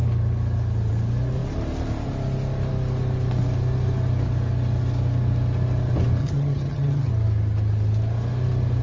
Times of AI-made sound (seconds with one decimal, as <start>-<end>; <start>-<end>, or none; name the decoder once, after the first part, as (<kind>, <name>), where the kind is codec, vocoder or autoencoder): 6.2-7.1 (vocoder, HiFi-GAN)